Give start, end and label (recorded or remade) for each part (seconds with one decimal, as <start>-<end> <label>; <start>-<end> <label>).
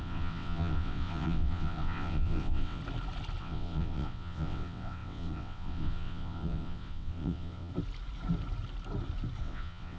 0.0-2.8 remade; 2.8-3.4 recorded; 3.4-7.7 remade; 7.7-9.4 recorded; 9.4-10.0 remade